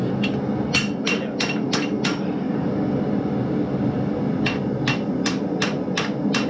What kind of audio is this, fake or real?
real